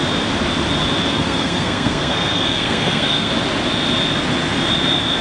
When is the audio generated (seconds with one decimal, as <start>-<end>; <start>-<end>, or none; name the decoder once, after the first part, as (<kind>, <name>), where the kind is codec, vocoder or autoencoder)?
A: 1.1-3.3 (codec, SNAC)